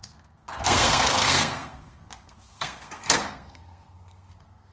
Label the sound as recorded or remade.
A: remade